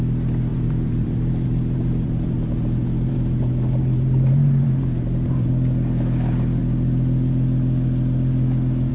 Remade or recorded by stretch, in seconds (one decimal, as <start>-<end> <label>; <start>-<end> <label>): 0.0-0.5 recorded; 0.5-5.5 remade; 5.5-8.9 recorded